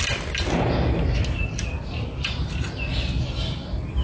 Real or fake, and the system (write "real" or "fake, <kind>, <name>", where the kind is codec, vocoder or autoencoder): real